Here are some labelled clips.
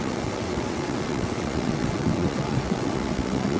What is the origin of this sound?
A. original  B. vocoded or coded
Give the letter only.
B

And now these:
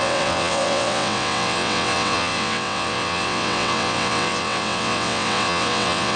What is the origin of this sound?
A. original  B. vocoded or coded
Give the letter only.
B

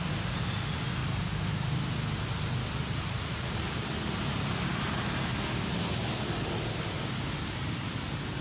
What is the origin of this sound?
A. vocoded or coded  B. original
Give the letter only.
B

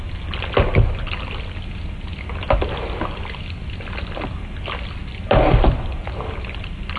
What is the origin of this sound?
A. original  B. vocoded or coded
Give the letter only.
A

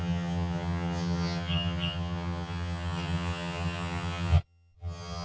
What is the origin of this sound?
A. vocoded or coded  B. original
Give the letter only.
A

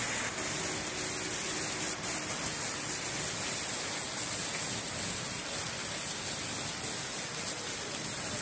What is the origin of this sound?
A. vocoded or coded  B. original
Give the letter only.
B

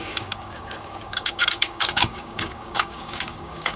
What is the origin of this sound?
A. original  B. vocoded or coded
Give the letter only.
B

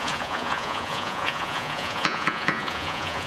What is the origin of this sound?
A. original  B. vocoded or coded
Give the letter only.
B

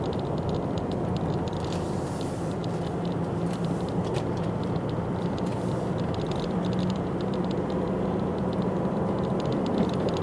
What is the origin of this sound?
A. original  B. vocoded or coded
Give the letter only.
B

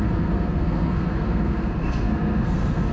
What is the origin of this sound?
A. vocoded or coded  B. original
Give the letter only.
A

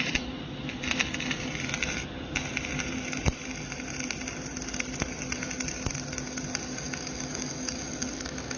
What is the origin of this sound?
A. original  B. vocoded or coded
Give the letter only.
A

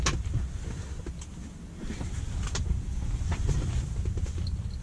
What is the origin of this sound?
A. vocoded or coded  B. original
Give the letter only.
B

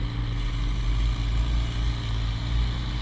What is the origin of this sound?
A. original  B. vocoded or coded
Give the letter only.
A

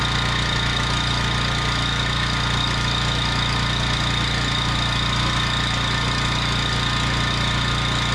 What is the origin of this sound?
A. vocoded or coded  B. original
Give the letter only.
B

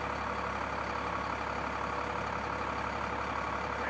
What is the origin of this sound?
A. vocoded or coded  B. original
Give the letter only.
B